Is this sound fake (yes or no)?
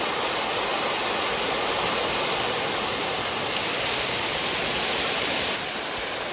no